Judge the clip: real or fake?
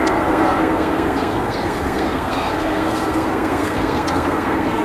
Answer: fake